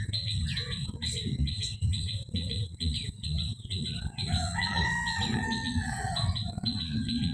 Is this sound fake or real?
fake